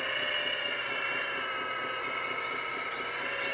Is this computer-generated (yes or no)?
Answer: no